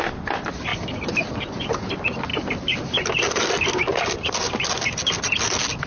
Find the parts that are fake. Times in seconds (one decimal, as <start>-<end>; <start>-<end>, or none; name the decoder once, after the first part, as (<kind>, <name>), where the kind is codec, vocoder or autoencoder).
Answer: none